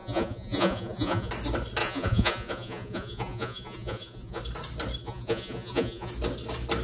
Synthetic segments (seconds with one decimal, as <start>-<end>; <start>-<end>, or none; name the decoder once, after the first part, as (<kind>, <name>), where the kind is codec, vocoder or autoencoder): 0.0-1.3 (vocoder, Vocos); 1.8-4.4; 5.0-6.1